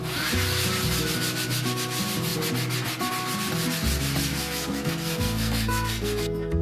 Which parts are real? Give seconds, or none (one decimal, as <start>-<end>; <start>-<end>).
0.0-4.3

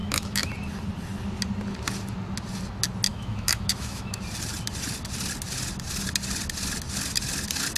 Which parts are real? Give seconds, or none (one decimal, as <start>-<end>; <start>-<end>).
0.5-3.1; 4.2-7.8

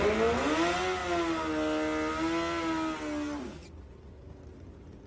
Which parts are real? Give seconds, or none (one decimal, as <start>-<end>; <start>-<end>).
0.0-5.1

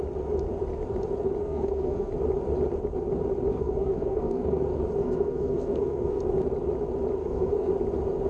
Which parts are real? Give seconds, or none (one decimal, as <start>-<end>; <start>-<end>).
0.0-1.4; 2.1-3.5; 4.6-5.0; 6.2-7.2; 7.7-8.3

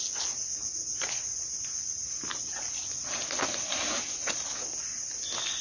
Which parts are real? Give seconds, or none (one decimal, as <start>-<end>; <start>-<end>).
0.0-5.6